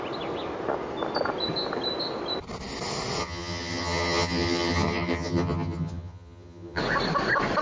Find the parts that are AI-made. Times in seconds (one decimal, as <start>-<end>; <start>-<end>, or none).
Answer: 3.2-6.8